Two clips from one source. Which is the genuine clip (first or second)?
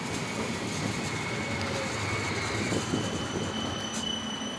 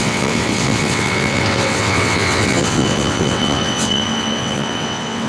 first